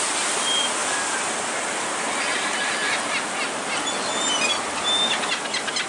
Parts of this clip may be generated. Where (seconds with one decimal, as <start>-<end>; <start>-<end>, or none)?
none